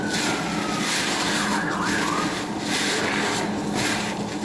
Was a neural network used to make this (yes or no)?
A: no